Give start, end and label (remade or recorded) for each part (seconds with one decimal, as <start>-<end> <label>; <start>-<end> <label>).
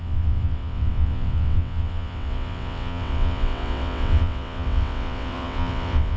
0.0-6.2 remade